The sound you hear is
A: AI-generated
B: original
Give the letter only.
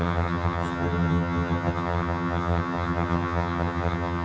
A